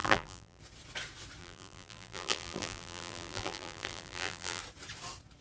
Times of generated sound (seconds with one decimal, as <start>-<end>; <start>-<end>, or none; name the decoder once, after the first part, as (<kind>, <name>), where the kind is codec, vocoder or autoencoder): 0.0-0.6 (vocoder, BigVGAN v2); 1.4-4.6